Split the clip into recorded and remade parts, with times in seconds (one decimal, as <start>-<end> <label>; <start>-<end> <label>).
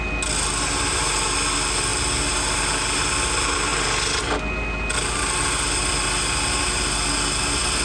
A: 0.0-7.8 recorded